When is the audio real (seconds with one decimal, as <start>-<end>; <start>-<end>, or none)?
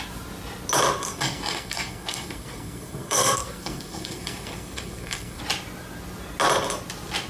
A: 0.0-1.0; 5.4-7.3